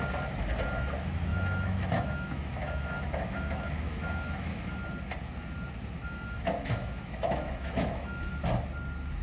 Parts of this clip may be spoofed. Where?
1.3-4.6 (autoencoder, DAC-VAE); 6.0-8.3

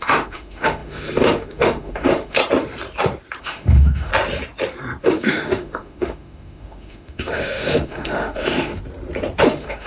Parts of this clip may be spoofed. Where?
0.0-2.4 (autoencoder, DAC-VAE); 3.4-4.1; 5.0-8.7; 9.4-9.9

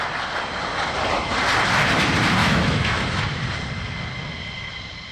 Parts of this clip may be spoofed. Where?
2.4-3.4 (autoencoder, DAC-VAE)